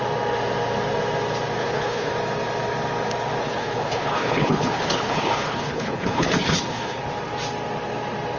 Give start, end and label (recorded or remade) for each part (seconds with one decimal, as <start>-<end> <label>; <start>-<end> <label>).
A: 0.0-1.6 recorded; 1.6-2.1 remade; 2.1-3.4 recorded; 3.4-7.0 remade; 7.0-8.4 recorded